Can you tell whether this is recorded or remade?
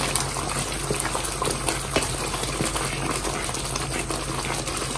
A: recorded